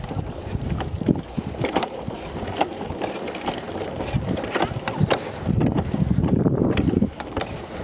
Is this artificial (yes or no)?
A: yes